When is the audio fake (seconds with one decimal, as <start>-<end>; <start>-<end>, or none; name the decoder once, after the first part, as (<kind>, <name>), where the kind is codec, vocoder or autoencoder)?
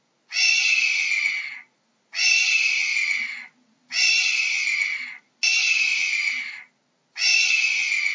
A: none